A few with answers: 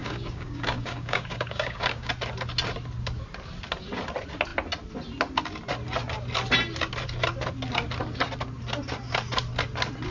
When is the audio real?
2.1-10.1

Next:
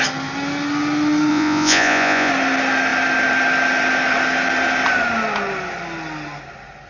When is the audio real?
0.0-1.3; 2.3-6.9

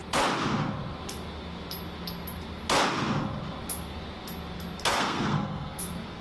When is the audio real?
0.0-4.9; 5.8-6.2

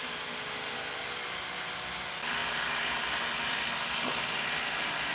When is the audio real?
0.0-5.1

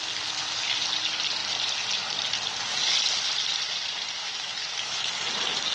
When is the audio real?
0.0-4.2; 5.1-5.7

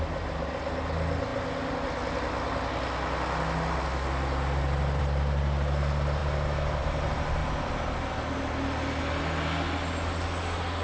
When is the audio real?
0.0-10.8

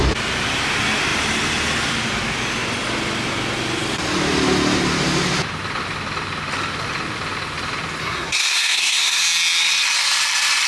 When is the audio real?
0.0-8.0; 9.2-10.7